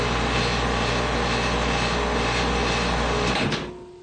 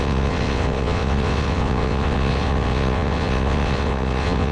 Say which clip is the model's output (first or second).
second